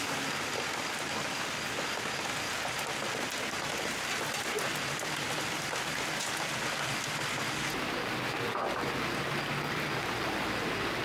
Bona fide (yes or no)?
yes